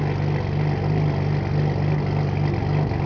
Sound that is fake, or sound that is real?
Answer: real